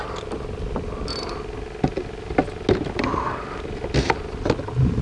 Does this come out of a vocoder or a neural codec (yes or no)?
no